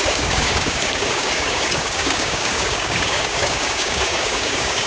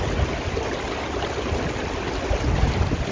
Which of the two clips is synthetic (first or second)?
first